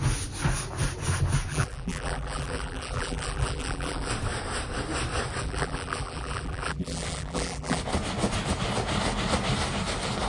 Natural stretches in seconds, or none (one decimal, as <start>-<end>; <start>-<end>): 0.0-1.5; 4.1-5.4; 7.8-10.3